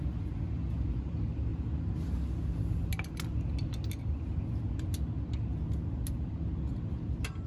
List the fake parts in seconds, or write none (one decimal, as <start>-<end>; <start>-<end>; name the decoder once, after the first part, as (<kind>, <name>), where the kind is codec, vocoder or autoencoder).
none